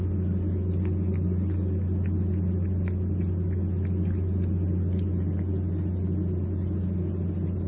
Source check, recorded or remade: recorded